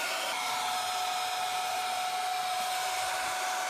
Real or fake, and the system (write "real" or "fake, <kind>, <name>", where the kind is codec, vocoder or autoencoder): real